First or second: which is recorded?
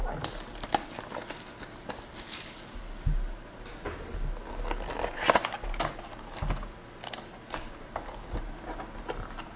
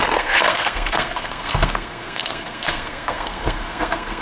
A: first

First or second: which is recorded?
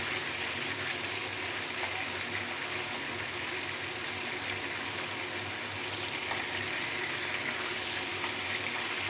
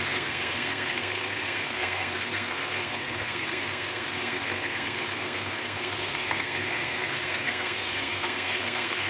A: first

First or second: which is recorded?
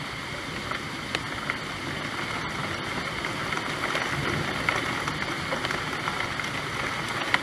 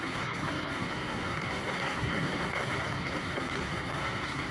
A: first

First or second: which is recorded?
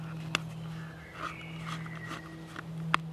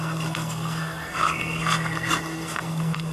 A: first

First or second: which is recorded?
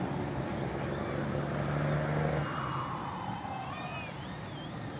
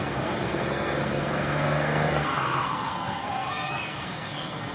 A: first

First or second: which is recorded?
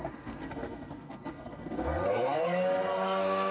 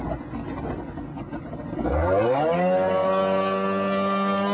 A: second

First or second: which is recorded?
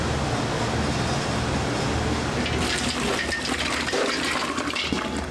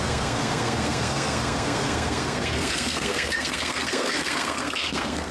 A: first